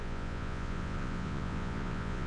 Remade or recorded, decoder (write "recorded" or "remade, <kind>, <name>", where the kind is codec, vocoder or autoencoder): remade, vocoder, Vocos